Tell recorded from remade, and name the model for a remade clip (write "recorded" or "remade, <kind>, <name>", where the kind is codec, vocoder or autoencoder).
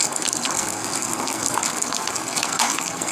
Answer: remade, codec, SNAC